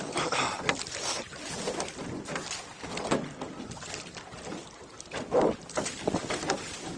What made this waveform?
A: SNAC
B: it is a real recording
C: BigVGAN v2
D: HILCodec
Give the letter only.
C